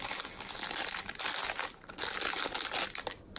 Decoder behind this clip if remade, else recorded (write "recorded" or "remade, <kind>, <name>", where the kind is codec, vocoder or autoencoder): recorded